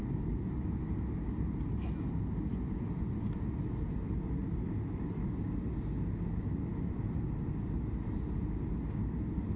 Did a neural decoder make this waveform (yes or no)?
no